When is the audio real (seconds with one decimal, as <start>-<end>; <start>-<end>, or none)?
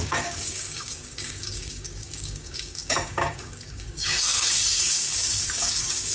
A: none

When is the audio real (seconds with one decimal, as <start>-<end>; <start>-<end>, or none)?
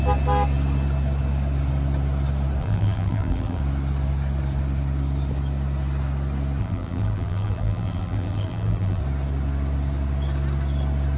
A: 0.0-2.6; 3.6-6.6; 9.0-11.2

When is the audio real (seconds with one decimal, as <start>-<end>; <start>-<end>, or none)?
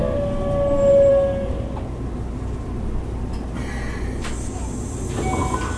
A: 0.0-5.8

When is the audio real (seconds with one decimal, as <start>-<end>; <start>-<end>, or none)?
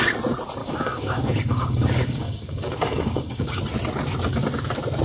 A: 0.0-0.6; 3.6-5.0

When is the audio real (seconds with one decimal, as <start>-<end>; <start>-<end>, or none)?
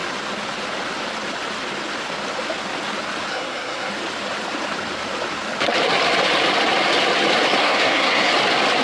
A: 0.0-3.3; 3.9-7.6; 8.3-8.8